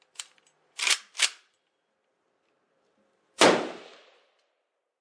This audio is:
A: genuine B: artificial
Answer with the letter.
B